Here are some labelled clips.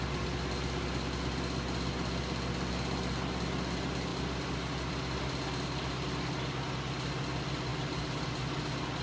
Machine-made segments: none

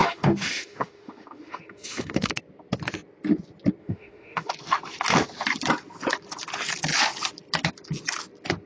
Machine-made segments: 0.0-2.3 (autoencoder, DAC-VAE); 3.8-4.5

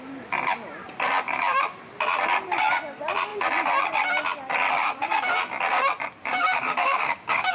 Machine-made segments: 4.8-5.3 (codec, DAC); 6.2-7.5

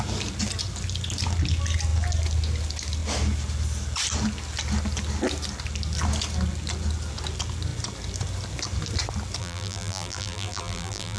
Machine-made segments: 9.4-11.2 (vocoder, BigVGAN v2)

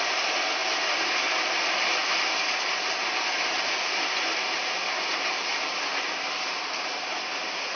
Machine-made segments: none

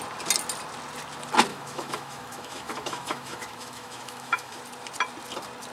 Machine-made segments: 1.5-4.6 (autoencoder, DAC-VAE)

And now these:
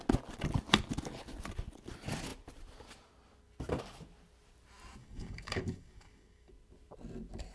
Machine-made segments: 5.0-6.5 (codec, DAC)

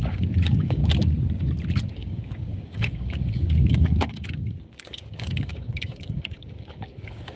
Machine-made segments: 0.0-0.8 (codec, DAC); 1.9-7.4